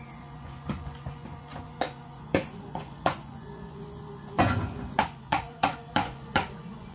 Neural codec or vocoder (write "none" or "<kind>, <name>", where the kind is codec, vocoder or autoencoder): vocoder, Vocos